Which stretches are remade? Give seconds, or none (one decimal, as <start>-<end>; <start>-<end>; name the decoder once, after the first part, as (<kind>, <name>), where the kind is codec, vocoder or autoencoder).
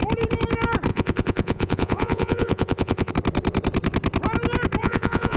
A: 0.9-3.1 (vocoder, Vocos); 4.8-5.4